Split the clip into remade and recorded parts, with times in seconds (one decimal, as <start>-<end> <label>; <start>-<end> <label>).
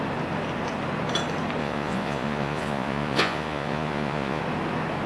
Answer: 0.0-1.6 recorded; 1.6-4.4 remade; 4.4-5.1 recorded